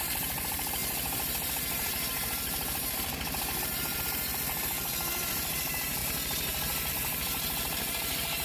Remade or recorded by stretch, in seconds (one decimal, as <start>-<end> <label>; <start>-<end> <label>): 0.0-8.4 remade